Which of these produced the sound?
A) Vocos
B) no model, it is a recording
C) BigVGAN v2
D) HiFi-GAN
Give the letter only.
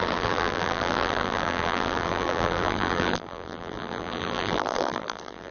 C